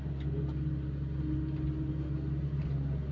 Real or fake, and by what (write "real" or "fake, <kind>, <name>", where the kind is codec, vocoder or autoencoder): real